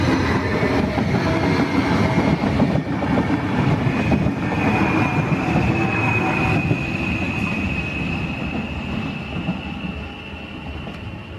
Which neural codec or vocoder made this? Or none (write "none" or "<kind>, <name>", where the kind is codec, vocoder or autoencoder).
none